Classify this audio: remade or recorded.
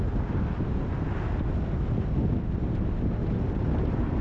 recorded